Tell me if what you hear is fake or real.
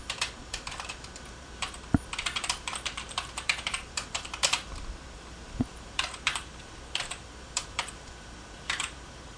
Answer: fake